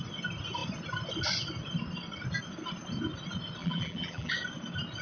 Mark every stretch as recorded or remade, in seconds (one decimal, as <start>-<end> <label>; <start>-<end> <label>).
0.0-3.6 recorded; 3.6-4.3 remade; 4.3-5.0 recorded